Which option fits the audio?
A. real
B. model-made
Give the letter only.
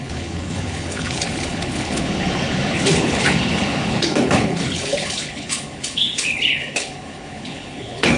B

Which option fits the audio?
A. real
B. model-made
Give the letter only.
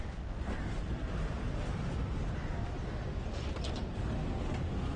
A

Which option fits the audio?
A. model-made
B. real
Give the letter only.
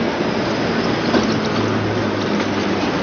B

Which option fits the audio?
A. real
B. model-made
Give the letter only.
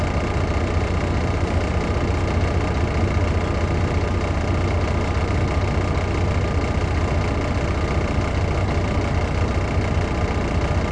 A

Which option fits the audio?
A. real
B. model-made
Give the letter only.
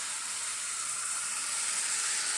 B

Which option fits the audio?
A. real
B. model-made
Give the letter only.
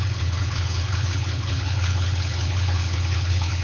B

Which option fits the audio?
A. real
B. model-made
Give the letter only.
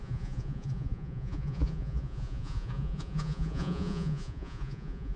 B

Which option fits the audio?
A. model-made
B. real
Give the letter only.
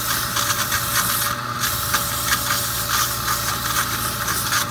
B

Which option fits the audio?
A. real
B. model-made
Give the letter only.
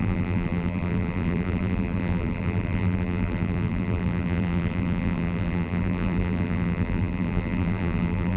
B